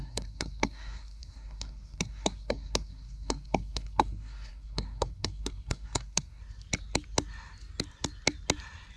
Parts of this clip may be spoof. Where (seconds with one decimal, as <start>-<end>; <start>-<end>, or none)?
0.0-6.4